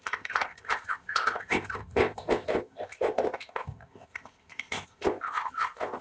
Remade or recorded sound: remade